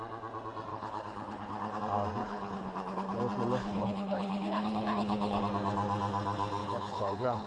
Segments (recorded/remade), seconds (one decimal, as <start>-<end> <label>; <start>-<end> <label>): 0.0-0.7 recorded; 0.7-1.8 remade; 1.8-2.2 recorded; 2.2-3.2 remade; 3.2-3.6 recorded; 3.6-5.4 remade; 5.4-6.6 recorded; 6.6-7.5 remade